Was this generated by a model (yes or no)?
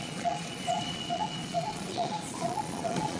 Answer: yes